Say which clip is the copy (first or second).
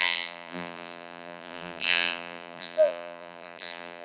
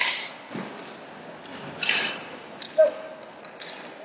first